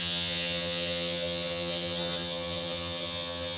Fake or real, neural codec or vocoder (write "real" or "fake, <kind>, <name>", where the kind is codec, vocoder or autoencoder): fake, vocoder, HiFi-GAN